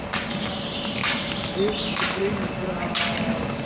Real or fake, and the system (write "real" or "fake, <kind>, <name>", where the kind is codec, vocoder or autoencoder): real